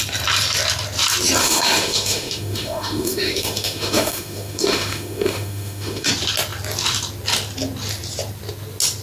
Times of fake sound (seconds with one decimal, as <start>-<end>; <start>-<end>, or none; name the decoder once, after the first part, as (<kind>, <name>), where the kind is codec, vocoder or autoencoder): 1.4-6.1 (autoencoder, DAC-VAE)